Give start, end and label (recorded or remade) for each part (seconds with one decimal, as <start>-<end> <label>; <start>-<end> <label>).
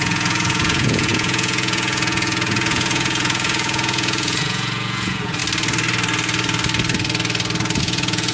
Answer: 0.0-5.4 remade; 5.4-7.8 recorded; 7.8-8.3 remade